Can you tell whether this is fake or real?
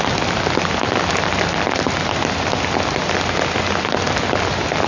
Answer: real